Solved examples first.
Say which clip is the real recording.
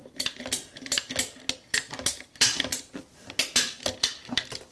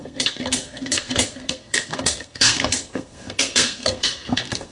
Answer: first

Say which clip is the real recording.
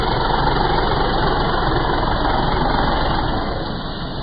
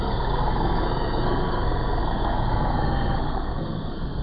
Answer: first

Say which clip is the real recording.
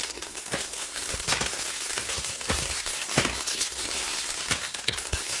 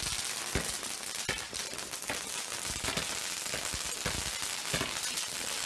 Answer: second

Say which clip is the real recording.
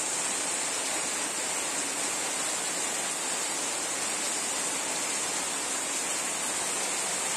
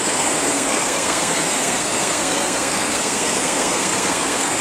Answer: first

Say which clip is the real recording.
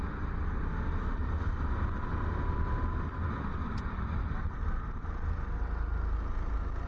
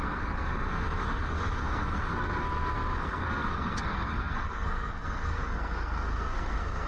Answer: first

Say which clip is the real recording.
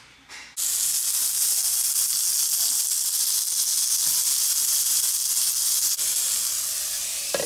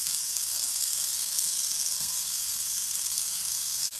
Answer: first